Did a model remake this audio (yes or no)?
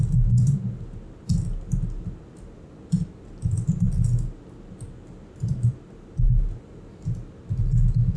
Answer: no